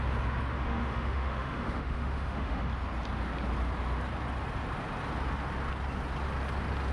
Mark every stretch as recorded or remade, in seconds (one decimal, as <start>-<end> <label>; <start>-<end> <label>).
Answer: 0.0-0.5 recorded; 0.5-2.7 remade; 2.7-6.9 recorded